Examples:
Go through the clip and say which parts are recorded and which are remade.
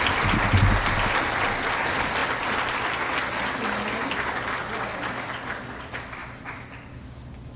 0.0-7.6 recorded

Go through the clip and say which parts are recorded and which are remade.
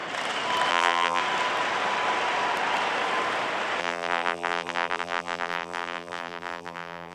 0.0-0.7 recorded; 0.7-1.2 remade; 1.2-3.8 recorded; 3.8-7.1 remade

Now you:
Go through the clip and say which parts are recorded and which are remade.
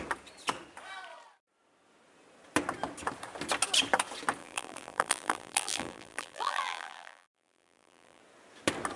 0.0-4.4 recorded; 4.4-8.2 remade; 8.2-9.0 recorded